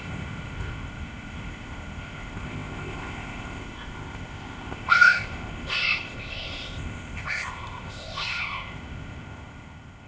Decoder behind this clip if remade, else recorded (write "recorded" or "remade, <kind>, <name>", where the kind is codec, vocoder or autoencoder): remade, codec, ZipCodec